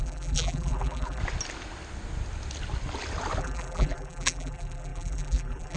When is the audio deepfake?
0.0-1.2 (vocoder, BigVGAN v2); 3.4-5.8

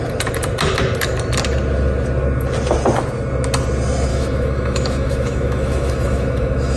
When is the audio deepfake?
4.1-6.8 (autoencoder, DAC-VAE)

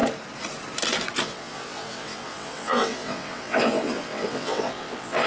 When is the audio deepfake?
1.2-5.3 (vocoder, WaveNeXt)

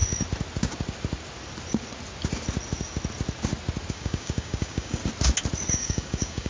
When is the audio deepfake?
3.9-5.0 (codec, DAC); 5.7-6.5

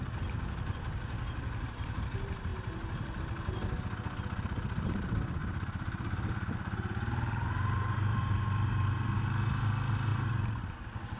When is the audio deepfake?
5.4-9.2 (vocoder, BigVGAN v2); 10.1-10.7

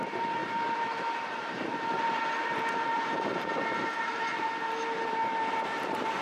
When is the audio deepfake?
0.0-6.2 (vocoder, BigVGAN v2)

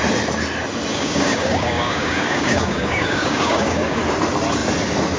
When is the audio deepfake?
0.9-4.0 (codec, DAC)